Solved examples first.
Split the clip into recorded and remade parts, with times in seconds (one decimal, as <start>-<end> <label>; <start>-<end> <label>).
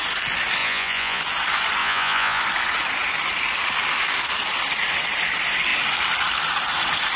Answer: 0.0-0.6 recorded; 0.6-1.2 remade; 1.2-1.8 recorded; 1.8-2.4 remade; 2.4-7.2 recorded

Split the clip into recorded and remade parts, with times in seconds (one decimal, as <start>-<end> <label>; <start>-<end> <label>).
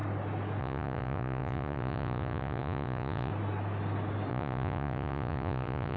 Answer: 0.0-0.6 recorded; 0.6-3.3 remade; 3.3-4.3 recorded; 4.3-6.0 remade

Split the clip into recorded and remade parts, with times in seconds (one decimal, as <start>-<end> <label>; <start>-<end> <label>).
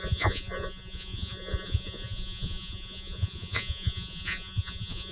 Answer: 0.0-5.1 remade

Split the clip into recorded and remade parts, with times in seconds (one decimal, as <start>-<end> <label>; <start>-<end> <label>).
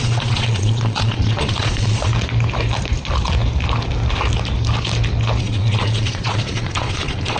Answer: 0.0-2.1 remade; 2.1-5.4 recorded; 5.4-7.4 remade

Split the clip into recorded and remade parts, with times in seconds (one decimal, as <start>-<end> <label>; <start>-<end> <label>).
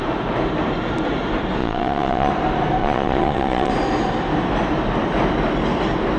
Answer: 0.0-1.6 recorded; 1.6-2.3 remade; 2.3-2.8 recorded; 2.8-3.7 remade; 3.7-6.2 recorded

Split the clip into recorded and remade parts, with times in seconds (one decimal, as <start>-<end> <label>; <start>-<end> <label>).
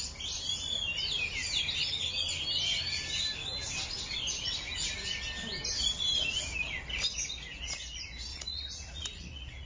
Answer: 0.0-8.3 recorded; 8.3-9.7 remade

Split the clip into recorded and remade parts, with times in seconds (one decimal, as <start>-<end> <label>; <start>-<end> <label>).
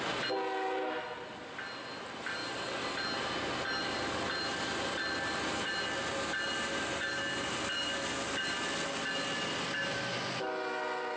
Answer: 0.0-11.2 recorded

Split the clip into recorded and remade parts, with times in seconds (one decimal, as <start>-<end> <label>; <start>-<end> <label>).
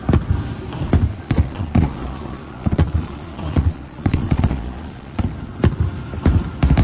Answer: 0.0-1.1 recorded; 1.1-5.2 remade; 5.2-6.8 recorded